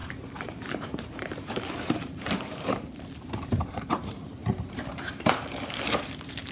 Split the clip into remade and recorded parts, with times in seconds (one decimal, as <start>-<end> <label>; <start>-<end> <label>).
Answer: 0.0-6.5 remade